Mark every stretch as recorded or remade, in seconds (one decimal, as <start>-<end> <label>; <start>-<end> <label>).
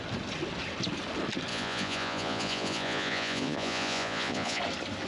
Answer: 0.0-1.5 recorded; 1.5-4.6 remade; 4.6-5.1 recorded